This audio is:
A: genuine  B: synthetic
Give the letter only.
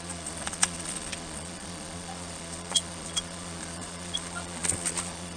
B